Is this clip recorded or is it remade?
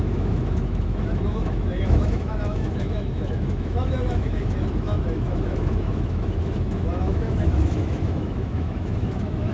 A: remade